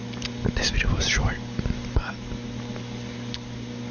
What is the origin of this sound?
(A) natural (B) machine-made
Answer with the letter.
A